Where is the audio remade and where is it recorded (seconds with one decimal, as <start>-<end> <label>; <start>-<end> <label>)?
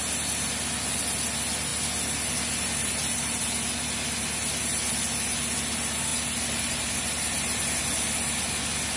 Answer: 0.0-9.0 recorded